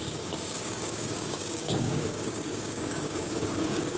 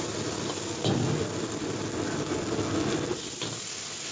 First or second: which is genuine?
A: second